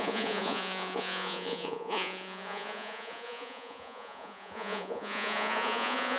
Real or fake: fake